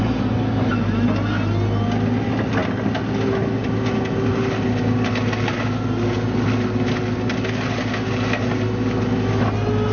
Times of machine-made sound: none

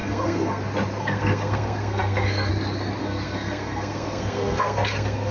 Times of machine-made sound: 0.0-0.6 (codec, SNAC); 1.0-2.5; 3.0-5.3

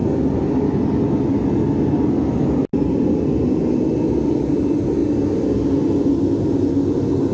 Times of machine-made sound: none

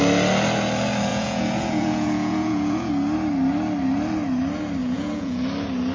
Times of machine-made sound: 1.1-2.9 (vocoder, Vocos); 4.8-5.4

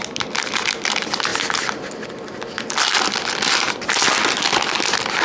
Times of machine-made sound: none

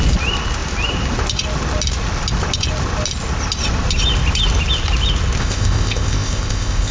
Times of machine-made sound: 5.4-6.9 (codec, ZipCodec)

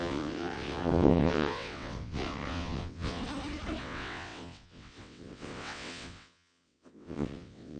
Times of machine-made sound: 0.0-3.2 (vocoder, WaveNeXt); 3.8-7.8

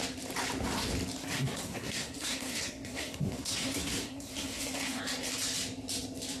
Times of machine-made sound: 1.2-5.0 (codec, SNAC)